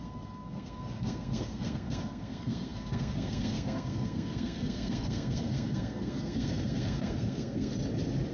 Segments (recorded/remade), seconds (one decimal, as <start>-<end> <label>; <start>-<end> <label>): 0.0-7.7 remade; 7.7-8.3 recorded